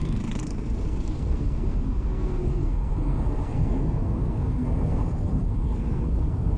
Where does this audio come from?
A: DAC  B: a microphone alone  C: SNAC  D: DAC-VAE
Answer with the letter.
C